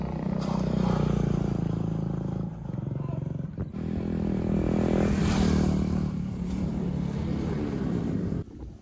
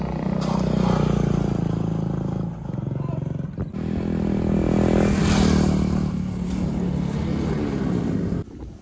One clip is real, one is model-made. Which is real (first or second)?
second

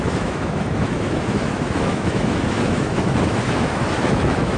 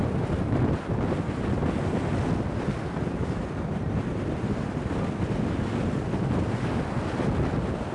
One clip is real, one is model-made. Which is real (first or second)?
second